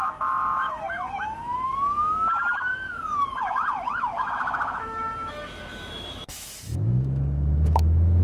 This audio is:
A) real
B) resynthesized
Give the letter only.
B